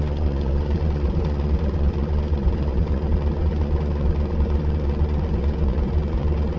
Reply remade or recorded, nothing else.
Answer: remade